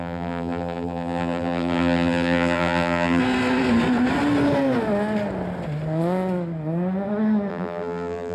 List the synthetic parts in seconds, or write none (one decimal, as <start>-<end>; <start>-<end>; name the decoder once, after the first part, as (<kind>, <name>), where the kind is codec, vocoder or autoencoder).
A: 0.0-3.2 (vocoder, BigVGAN v2); 7.5-8.3